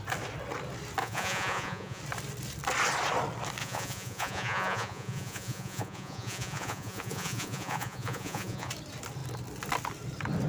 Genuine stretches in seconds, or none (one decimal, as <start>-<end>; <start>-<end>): 0.0-1.0; 2.0-3.6; 8.7-10.5

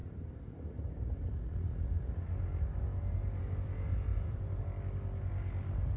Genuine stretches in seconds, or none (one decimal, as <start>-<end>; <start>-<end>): 0.0-4.1; 4.6-6.0

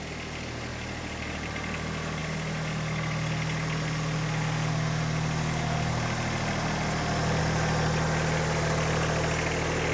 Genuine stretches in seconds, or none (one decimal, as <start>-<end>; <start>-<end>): 0.0-0.7; 1.5-9.9

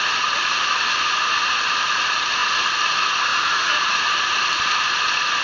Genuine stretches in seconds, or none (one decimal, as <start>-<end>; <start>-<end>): 0.0-3.3; 4.0-5.4